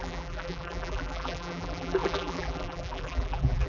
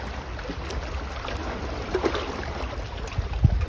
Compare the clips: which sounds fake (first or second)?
first